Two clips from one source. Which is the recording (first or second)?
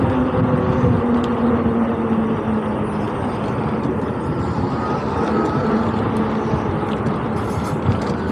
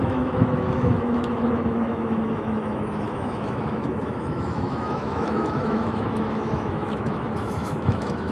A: first